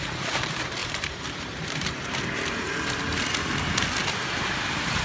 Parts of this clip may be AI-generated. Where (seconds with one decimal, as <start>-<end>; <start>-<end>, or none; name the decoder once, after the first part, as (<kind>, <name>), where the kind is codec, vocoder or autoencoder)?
0.8-2.2 (vocoder, BigVGAN v2); 4.0-5.0